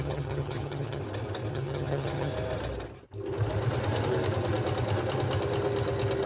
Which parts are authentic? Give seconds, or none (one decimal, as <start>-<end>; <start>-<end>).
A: 1.0-1.5; 2.3-6.3